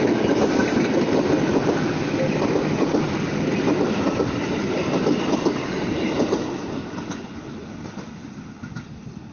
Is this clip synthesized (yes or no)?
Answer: no